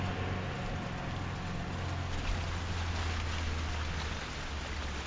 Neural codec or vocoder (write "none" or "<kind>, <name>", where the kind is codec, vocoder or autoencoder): none